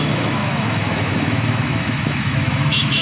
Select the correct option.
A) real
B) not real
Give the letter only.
B